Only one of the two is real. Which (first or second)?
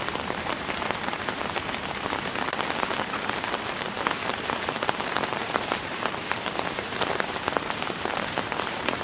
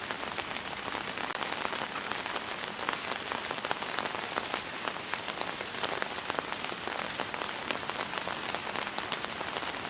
second